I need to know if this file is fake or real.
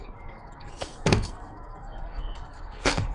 fake